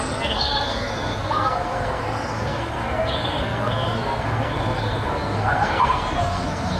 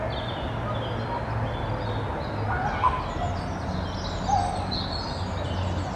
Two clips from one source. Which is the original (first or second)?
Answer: second